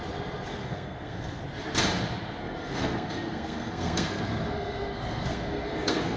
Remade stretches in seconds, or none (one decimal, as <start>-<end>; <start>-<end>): 0.5-1.4; 2.4-6.2